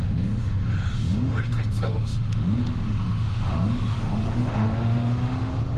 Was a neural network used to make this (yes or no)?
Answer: yes